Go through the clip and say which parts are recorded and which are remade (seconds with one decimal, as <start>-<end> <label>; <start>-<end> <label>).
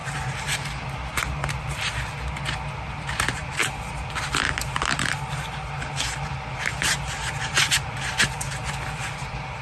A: 0.0-9.6 recorded